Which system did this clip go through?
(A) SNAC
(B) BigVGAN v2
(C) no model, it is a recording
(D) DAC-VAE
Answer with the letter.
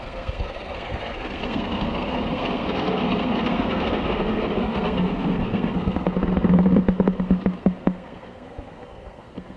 A